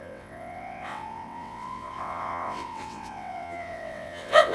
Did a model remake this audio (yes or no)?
yes